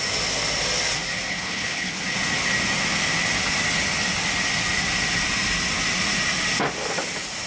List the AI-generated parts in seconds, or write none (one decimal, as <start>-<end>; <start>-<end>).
1.3-2.0